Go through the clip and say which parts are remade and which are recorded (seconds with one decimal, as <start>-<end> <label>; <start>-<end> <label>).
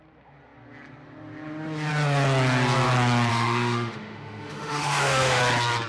0.0-3.3 recorded; 3.3-5.4 remade; 5.4-5.9 recorded